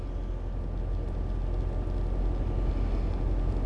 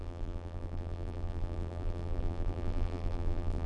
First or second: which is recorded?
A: first